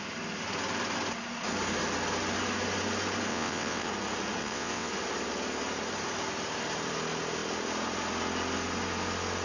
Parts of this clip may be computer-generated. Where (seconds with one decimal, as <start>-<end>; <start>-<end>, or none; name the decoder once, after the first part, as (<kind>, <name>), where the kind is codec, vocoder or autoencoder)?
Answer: 3.3-3.9 (vocoder, WaveNeXt); 4.4-4.9